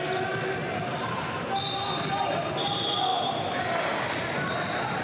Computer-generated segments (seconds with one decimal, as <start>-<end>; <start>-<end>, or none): 3.1-3.6